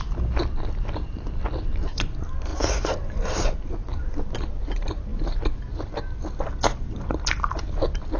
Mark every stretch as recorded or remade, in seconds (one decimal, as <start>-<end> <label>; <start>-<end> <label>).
0.0-2.5 recorded; 2.5-3.4 remade; 3.4-3.9 recorded; 3.9-4.6 remade; 4.6-8.2 recorded